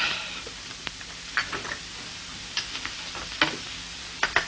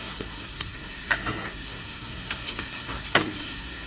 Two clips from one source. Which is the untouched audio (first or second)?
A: first